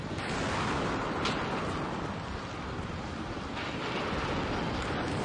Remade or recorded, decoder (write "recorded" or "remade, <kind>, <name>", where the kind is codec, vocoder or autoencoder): recorded